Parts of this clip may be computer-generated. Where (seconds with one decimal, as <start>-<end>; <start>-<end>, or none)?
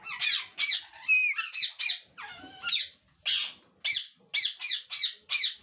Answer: none